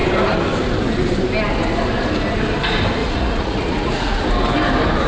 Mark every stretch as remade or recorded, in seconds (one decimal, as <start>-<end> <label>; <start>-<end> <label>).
0.0-3.0 recorded; 3.0-4.3 remade; 4.3-5.1 recorded

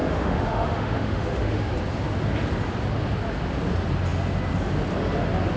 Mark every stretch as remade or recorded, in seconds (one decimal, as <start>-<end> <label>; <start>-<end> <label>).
0.0-1.6 remade; 1.6-5.6 recorded